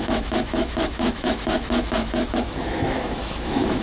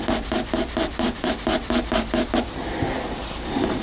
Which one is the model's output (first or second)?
first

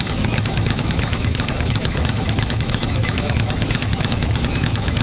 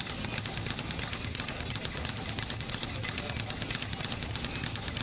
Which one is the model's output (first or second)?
first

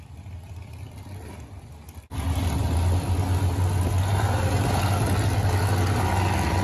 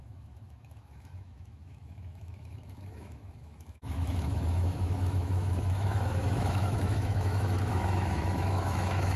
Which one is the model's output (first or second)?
second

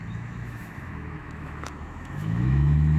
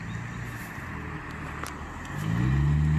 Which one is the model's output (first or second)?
first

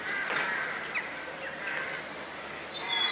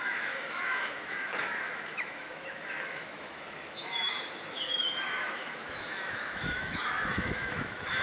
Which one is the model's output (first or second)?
second